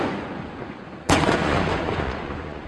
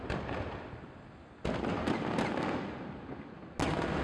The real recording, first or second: second